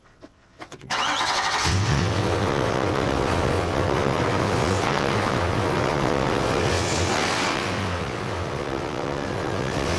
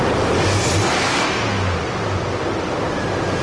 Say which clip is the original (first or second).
second